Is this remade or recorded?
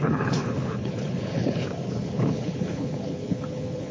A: remade